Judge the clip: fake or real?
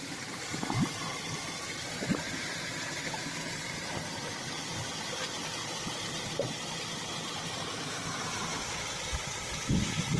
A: real